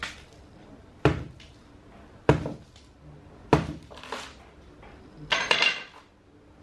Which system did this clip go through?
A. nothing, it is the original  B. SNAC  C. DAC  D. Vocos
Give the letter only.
A